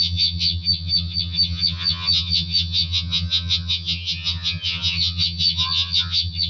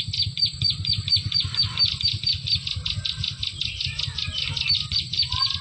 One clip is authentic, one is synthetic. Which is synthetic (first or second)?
first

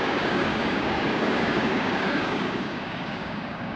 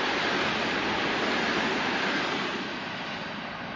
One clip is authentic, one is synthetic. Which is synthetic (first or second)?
first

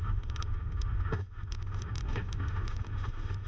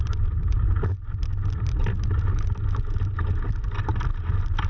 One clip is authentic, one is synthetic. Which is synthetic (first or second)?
first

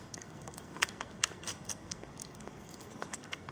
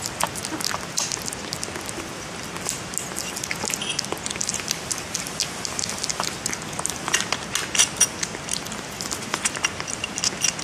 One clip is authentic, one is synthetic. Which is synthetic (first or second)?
first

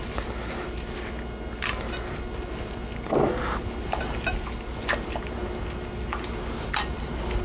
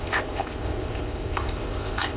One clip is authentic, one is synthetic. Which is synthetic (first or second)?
second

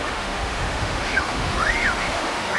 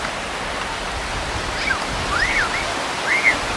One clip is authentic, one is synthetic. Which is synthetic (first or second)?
first